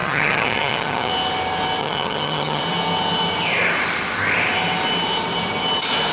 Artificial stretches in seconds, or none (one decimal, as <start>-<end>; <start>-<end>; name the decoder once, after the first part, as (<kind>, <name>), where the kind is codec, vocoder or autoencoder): 0.0-1.1 (vocoder, HiFi-GAN); 1.8-2.6